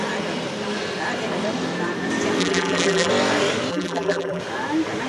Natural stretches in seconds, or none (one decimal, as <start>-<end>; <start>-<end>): 0.0-2.4; 3.1-3.7; 4.4-5.1